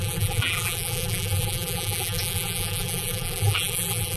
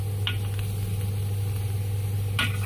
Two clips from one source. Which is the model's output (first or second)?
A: first